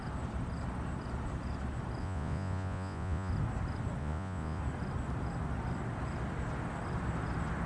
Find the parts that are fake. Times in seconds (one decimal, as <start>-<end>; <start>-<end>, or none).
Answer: 2.0-3.3; 4.0-4.6